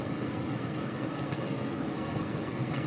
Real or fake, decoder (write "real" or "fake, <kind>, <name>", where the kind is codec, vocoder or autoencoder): fake, codec, SNAC